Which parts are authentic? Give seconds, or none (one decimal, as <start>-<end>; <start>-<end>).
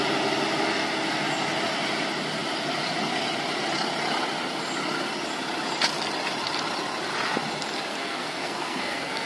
0.0-7.9